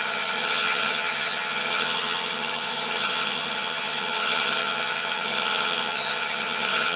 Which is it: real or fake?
fake